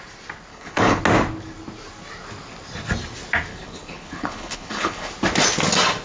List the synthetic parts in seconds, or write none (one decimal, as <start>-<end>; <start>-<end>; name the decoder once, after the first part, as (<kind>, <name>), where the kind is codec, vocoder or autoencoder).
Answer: 0.5-1.0 (codec, HILCodec); 3.5-5.1